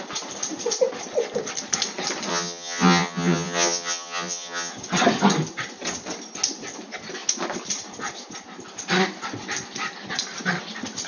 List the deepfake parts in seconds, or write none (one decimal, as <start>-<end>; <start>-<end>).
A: 2.3-4.7